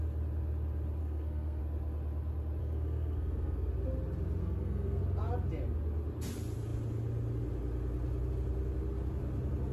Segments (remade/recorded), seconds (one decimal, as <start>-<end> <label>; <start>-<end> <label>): 0.0-1.0 recorded; 1.0-1.6 remade; 1.6-2.6 recorded; 2.6-3.7 remade; 3.7-4.4 recorded; 4.4-5.0 remade; 5.0-9.7 recorded